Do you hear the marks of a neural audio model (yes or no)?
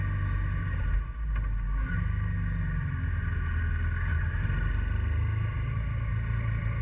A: no